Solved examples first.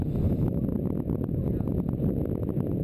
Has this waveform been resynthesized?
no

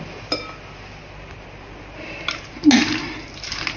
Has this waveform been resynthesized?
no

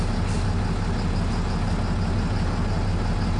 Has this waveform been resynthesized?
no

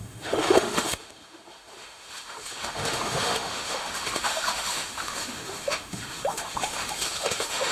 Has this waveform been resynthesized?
yes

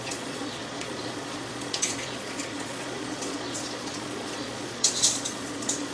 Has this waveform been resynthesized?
yes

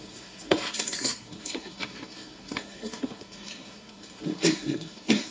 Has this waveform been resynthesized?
yes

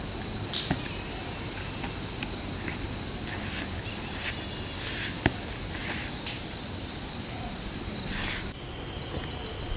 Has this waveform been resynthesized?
no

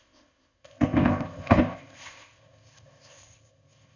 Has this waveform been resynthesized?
yes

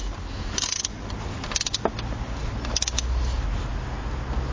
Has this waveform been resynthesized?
no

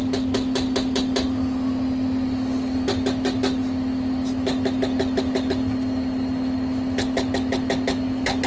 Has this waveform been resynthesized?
no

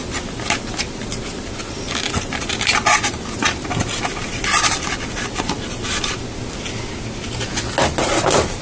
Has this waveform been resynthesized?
no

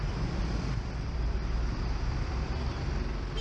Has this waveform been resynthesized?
yes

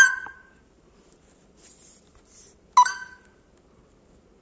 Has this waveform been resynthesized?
no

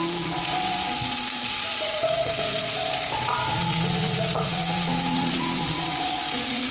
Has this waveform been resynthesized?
yes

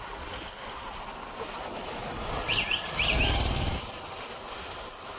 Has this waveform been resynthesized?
no